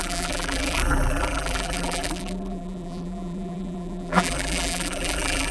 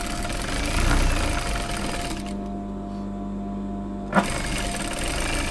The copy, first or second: first